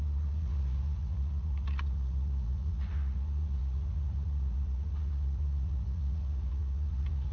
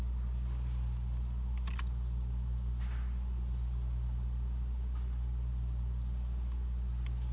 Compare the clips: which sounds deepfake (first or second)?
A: first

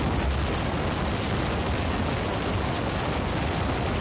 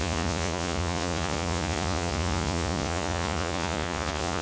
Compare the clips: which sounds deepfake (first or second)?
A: second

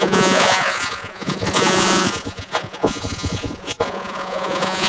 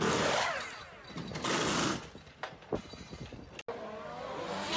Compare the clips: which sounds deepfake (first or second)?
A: first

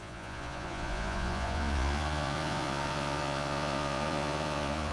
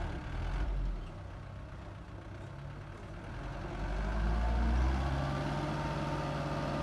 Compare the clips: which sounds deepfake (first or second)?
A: first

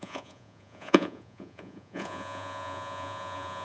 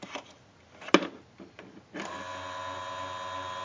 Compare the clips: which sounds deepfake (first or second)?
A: first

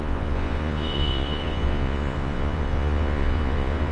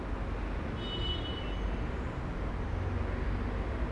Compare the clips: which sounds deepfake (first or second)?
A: first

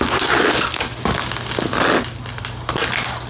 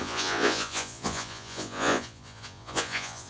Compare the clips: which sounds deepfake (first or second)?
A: second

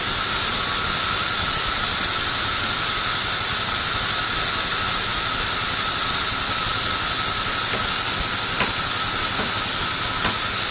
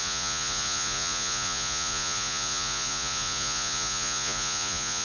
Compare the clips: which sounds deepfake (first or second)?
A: second